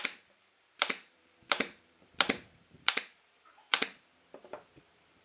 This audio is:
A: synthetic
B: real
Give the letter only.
A